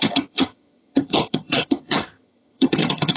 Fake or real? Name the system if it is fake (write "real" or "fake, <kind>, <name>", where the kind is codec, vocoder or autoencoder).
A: fake, vocoder, HiFi-GAN